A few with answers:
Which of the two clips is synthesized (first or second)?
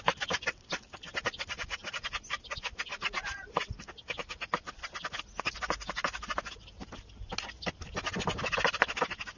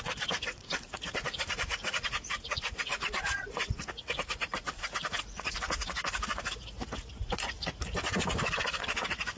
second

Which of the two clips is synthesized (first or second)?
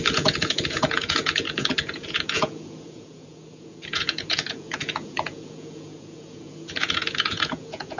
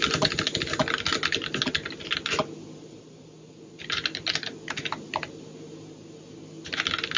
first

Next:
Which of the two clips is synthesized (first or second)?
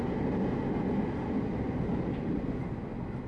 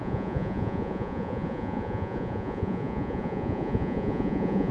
second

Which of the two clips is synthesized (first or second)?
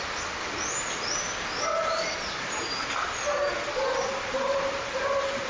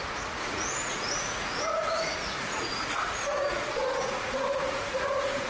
second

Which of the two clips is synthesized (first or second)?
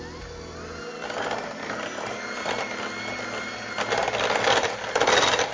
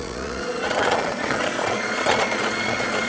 second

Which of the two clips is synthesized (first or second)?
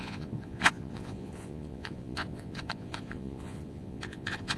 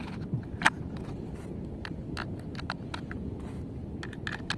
first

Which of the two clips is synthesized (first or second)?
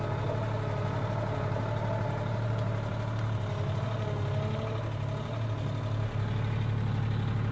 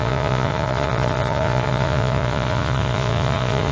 second